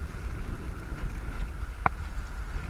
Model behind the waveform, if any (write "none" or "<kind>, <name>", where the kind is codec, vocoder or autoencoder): none